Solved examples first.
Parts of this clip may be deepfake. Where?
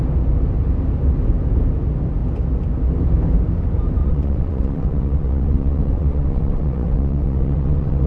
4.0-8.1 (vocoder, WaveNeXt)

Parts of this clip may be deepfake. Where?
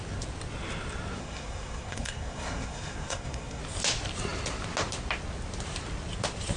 1.2-3.6 (codec, SNAC)